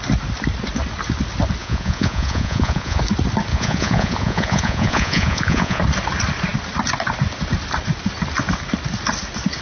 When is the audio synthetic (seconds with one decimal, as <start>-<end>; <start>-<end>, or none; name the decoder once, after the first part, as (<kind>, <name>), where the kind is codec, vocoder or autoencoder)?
1.6-3.0 (vocoder, Vocos); 3.5-5.8